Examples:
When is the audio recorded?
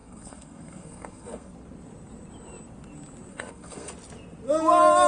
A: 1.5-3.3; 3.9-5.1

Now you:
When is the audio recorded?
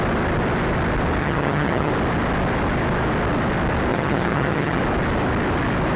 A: 0.0-1.2; 1.9-3.9; 4.8-6.0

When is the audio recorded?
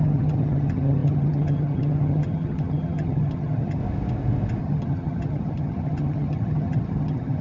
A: 3.8-4.6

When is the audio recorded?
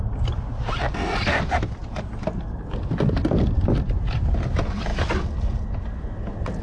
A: 0.0-6.6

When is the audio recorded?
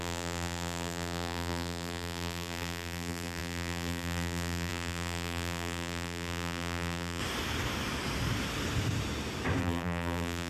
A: 7.2-9.6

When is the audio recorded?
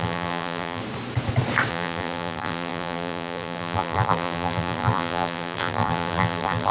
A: 0.8-1.7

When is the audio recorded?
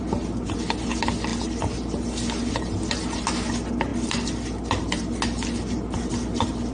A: 0.0-6.7